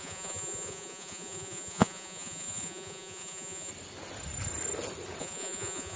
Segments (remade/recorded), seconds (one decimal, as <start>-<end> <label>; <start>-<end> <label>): 0.0-3.7 remade; 3.7-5.2 recorded; 5.2-6.0 remade